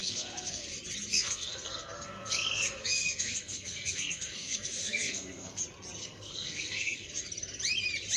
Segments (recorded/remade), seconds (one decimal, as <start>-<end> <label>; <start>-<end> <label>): 0.0-0.7 remade; 0.7-1.1 recorded; 1.1-5.6 remade; 5.6-6.0 recorded; 6.0-7.1 remade; 7.1-8.2 recorded